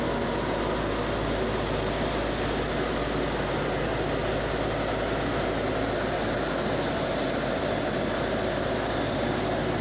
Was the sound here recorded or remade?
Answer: recorded